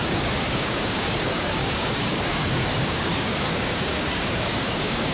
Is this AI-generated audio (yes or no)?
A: yes